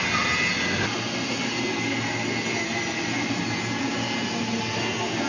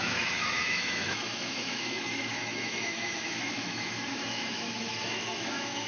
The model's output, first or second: second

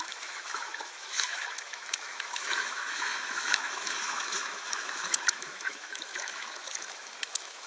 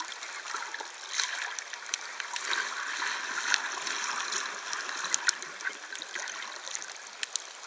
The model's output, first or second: first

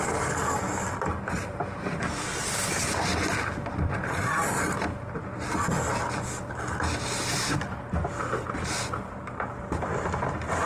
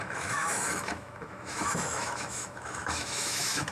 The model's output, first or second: second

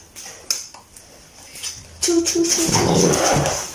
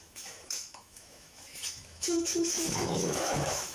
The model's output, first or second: second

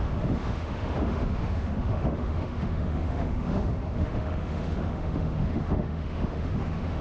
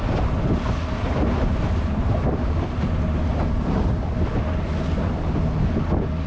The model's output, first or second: first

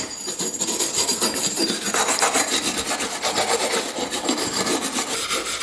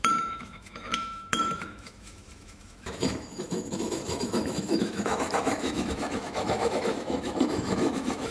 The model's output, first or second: second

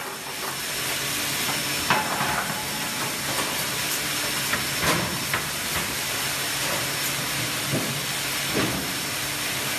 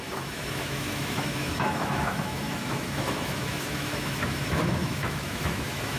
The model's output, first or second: second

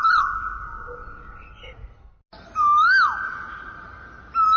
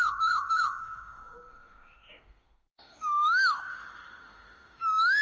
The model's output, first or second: second